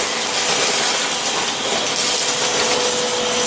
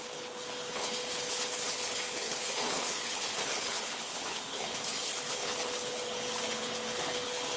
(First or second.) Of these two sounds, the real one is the first